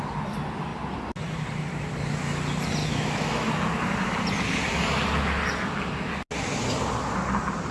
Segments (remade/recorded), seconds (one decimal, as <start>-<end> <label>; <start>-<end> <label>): 0.0-2.8 recorded; 2.8-3.5 remade; 3.5-7.7 recorded